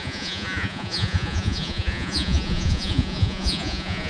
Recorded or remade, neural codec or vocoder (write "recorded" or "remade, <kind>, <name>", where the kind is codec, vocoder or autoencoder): remade, vocoder, Vocos